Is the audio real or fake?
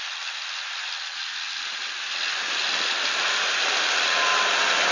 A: real